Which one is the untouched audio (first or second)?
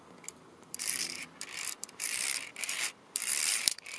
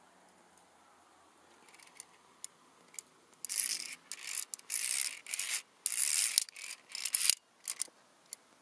second